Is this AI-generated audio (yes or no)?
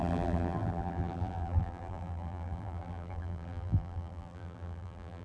yes